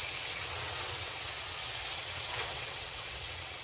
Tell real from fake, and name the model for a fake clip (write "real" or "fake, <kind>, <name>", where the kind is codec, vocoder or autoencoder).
fake, vocoder, WaveNeXt